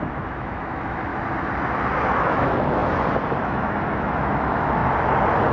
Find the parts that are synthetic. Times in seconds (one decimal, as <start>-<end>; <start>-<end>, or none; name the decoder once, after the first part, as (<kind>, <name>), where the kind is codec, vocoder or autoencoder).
0.0-1.1 (autoencoder, DAC-VAE); 2.1-2.8; 3.4-4.8

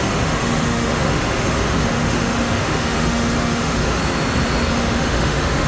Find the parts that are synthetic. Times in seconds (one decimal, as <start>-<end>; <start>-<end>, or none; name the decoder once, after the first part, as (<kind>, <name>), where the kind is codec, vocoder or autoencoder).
0.0-4.0 (autoencoder, DAC-VAE); 4.7-5.7

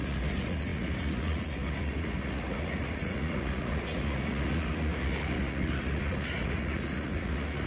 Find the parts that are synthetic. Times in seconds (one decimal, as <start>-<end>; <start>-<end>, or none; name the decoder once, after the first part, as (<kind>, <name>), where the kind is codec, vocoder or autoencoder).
0.0-7.7 (vocoder, Vocos)

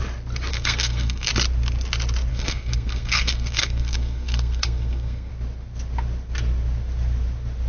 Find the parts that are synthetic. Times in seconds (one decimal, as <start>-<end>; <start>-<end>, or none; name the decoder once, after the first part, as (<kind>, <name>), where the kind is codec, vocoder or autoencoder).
0.5-1.3 (codec, SNAC); 2.3-5.3

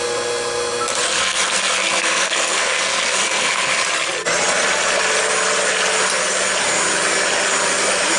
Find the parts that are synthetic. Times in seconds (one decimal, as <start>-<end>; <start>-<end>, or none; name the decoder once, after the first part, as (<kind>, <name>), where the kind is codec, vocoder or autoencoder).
1.0-3.7 (codec, SNAC)

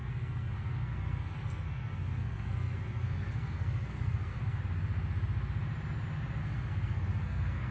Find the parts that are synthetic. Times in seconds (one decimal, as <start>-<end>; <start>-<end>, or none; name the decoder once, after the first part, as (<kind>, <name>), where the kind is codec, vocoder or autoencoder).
0.0-4.6 (codec, SNAC); 6.4-7.7